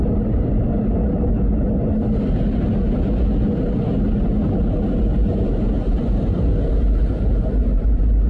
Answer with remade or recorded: recorded